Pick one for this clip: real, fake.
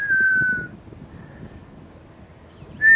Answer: real